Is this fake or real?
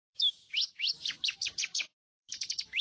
fake